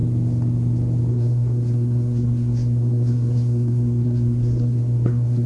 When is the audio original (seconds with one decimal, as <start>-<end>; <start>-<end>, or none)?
0.0-1.1

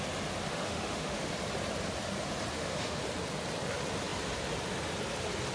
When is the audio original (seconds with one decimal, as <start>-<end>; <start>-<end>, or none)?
0.0-0.4; 1.3-2.5; 3.0-5.5

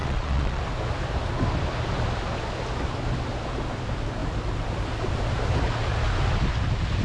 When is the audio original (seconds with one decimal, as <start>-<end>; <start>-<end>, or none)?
0.6-7.0